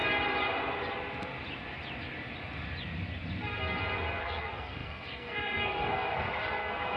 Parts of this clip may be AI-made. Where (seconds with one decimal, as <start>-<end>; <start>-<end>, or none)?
4.2-7.0